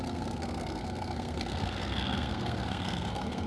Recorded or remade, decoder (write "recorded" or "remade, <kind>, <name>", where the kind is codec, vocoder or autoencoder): remade, codec, SNAC